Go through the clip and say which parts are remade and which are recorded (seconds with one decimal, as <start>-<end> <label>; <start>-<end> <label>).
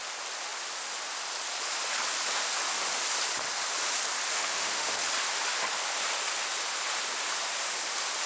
0.0-4.3 recorded; 4.3-5.0 remade; 5.0-8.3 recorded